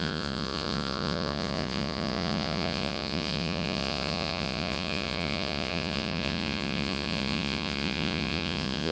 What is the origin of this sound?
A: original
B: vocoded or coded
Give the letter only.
B